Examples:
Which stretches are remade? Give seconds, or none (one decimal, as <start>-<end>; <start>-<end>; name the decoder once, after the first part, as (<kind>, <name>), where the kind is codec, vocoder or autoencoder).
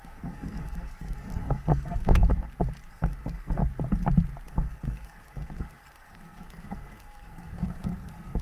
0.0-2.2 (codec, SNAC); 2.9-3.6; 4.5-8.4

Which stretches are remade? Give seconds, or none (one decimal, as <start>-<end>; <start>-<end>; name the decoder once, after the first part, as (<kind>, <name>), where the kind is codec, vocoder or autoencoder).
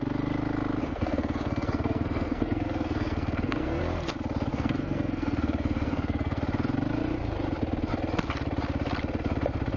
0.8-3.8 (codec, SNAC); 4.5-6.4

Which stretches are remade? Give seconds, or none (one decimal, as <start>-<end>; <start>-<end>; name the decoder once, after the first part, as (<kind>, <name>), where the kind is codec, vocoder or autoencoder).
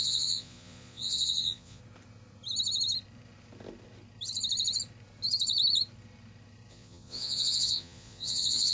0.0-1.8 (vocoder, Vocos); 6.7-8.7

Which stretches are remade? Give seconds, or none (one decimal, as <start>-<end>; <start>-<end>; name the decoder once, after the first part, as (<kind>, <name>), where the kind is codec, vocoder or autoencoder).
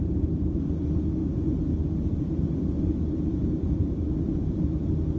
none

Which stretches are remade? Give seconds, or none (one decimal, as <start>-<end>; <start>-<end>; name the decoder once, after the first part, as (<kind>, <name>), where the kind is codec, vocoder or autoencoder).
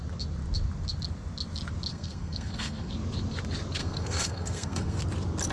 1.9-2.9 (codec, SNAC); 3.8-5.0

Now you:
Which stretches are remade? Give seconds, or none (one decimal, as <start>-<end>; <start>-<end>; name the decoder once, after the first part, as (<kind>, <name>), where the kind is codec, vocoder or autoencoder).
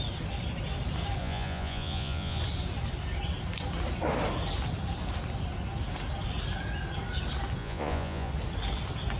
1.2-2.4 (vocoder, Vocos); 7.6-8.3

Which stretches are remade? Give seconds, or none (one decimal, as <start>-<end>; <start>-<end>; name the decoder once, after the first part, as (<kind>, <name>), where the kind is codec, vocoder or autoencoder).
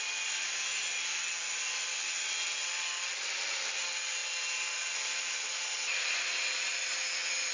none